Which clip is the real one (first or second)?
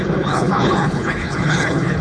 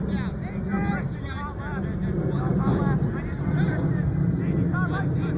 second